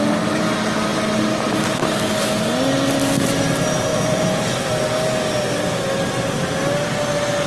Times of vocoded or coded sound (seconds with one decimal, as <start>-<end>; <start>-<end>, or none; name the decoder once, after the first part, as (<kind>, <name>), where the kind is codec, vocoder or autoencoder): 3.9-4.7 (vocoder, Vocos)